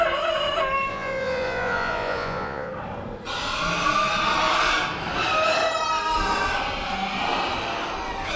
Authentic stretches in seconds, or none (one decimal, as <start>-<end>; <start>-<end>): 0.0-0.9; 2.7-8.4